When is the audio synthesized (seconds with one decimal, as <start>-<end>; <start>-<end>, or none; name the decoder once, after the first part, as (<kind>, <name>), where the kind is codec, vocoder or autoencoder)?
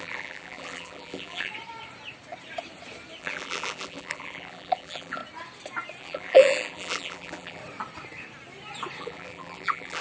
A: 0.0-1.5 (vocoder, BigVGAN v2); 3.2-5.2; 6.0-7.6; 9.0-10.0